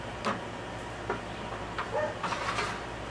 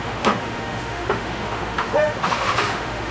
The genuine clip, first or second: first